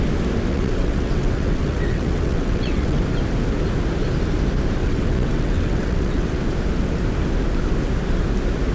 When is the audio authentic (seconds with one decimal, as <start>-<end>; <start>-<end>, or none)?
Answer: 0.0-0.5; 3.0-4.8; 6.4-8.7